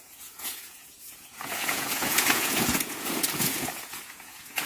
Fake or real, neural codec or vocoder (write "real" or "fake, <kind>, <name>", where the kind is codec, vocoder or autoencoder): fake, vocoder, Vocos